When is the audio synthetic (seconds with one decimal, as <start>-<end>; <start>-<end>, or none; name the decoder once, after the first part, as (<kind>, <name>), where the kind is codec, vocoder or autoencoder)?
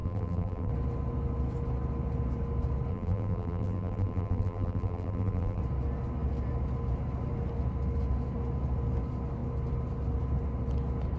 0.0-0.7 (vocoder, BigVGAN v2); 2.9-5.6